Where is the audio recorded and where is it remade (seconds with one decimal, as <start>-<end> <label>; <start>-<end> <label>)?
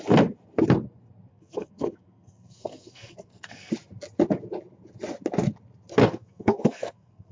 0.0-1.3 recorded; 1.3-3.7 remade; 3.7-6.0 recorded; 6.0-7.3 remade